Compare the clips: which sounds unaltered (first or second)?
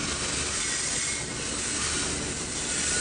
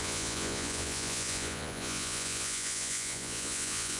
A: first